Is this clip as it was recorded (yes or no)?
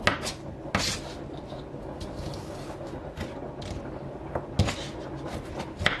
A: yes